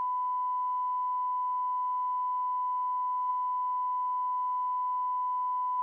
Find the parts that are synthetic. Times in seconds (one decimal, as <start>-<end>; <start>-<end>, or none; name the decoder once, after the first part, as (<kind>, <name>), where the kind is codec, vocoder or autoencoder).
none

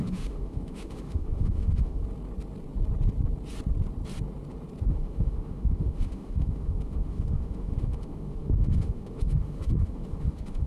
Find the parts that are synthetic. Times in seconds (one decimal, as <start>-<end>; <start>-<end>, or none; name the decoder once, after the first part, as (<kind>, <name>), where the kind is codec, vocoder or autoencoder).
0.0-2.0 (autoencoder, DAC-VAE); 4.8-10.7

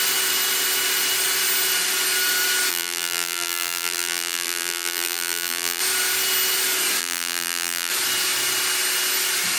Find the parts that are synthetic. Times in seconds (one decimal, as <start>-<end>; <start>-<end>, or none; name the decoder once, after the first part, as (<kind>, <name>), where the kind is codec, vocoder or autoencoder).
2.7-5.8 (vocoder, BigVGAN v2); 7.0-7.9

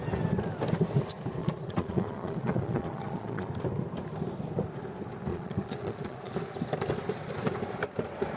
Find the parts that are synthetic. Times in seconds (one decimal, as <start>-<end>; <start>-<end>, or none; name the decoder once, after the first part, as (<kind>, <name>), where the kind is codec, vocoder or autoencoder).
1.4-3.5 (vocoder, Vocos); 5.3-6.3

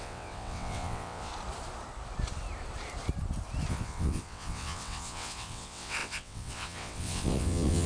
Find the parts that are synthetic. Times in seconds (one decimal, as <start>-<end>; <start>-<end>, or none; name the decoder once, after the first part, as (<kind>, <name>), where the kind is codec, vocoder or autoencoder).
0.0-1.3 (vocoder, WaveNeXt); 3.7-7.9

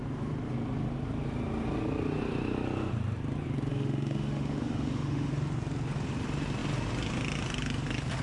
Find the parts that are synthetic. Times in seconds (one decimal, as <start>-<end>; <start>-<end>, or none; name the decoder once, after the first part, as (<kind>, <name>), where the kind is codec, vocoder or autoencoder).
3.7-5.3 (autoencoder, DAC-VAE)

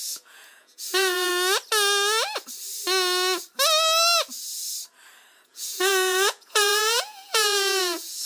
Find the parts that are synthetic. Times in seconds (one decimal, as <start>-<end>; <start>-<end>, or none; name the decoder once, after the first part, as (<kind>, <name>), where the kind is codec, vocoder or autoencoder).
0.0-1.3 (vocoder, Vocos); 5.4-8.3